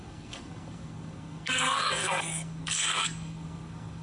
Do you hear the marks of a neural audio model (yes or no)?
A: yes